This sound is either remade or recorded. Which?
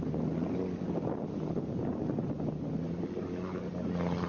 recorded